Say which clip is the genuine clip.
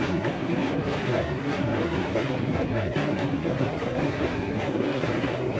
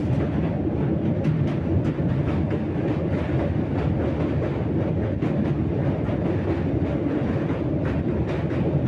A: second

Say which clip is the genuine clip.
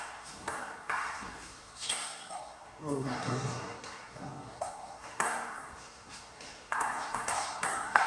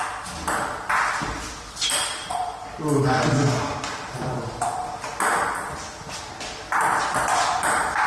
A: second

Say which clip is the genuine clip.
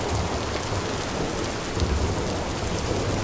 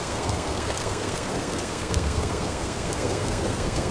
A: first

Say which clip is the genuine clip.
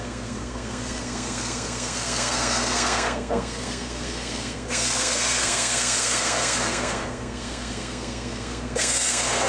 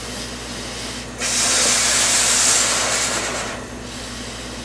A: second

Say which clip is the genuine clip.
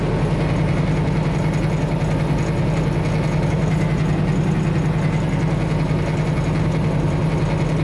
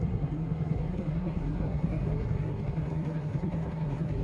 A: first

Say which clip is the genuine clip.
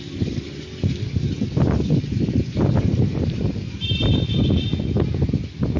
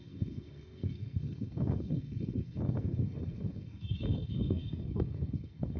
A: first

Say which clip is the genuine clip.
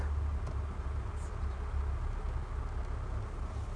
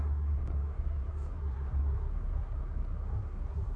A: first